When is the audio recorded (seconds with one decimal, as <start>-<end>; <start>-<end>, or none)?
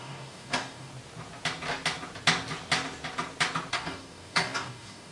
0.9-3.7